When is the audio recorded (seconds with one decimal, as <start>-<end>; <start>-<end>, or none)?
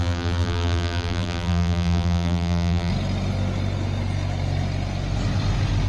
2.9-5.9